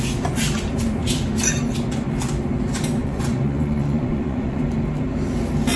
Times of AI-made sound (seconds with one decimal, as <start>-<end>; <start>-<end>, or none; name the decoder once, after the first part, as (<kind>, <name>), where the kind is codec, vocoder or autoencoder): 3.0-4.6 (vocoder, Vocos)

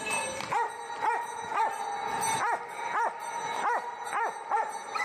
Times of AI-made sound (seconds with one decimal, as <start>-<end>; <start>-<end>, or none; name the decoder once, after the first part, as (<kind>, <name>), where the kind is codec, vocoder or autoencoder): none

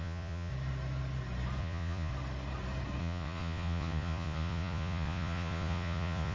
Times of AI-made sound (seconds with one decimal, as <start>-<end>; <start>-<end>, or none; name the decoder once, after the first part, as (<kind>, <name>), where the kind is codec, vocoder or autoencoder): 0.0-0.5 (vocoder, Vocos); 1.6-2.1; 3.0-6.3